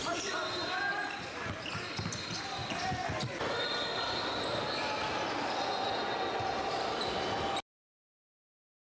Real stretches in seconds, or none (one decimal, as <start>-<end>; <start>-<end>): 0.0-9.0